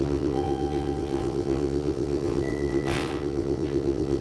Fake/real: fake